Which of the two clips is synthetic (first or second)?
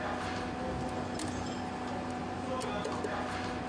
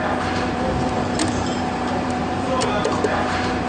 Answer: second